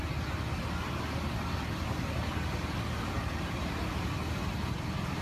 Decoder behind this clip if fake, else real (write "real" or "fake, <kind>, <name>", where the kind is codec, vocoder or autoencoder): real